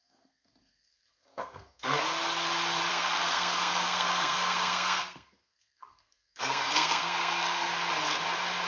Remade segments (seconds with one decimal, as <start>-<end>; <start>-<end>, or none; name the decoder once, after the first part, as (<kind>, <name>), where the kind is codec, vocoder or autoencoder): 0.0-2.0 (codec, SNAC); 2.9-7.7